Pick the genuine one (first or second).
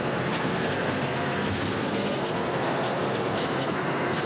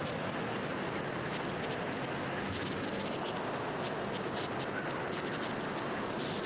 second